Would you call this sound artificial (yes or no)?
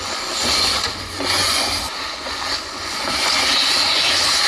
yes